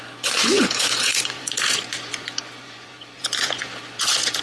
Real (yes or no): no